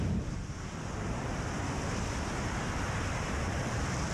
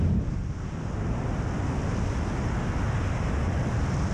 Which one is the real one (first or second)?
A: second